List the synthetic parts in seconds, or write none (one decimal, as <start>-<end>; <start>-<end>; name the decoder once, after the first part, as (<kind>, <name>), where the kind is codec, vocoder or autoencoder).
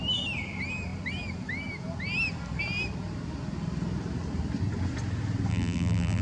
5.5-6.2 (vocoder, BigVGAN v2)